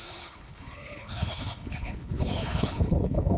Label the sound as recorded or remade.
remade